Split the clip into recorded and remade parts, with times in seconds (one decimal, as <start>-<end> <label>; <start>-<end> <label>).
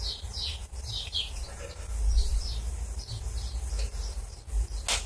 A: 0.0-5.1 recorded